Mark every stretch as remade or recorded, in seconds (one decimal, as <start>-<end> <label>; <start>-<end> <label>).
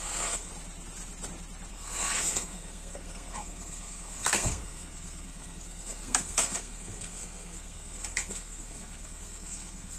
0.0-0.5 remade; 0.5-1.7 recorded; 1.7-10.0 remade